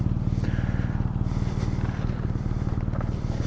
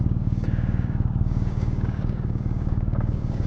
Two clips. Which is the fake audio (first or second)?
second